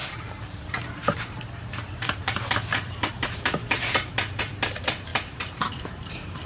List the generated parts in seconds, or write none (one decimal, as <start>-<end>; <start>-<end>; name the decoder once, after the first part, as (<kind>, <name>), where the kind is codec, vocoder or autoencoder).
0.0-6.5 (vocoder, BigVGAN v2)